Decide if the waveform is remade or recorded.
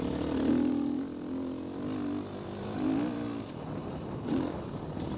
recorded